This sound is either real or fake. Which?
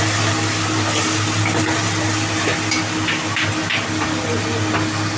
real